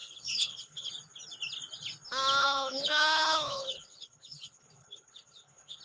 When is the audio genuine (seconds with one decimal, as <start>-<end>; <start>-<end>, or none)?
0.9-2.4